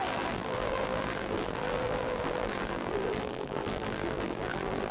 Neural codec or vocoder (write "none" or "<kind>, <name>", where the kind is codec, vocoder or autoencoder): vocoder, BigVGAN v2